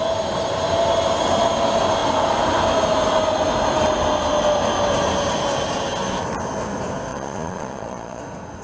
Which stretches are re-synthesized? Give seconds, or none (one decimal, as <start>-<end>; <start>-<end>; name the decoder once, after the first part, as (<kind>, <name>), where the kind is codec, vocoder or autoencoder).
7.1-8.2 (vocoder, Vocos)